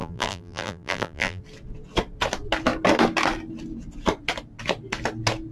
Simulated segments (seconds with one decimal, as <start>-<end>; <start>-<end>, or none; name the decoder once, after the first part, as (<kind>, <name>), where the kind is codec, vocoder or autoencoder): 0.0-1.4 (vocoder, BigVGAN v2)